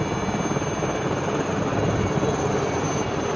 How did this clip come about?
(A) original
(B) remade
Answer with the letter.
A